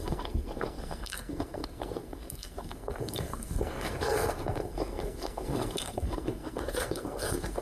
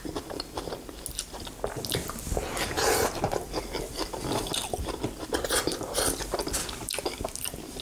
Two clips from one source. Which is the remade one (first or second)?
first